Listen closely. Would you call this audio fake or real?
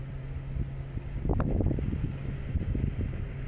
real